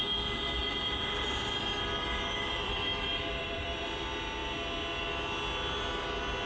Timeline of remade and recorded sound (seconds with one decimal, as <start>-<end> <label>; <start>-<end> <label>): 0.0-0.6 recorded; 0.6-4.0 remade; 4.0-6.5 recorded